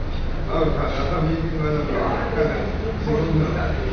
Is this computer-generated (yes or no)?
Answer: no